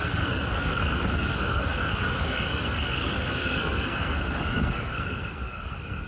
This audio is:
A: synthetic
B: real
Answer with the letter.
A